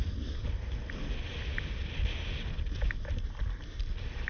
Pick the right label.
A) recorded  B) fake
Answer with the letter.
A